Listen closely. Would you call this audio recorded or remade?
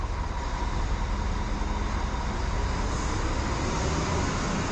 recorded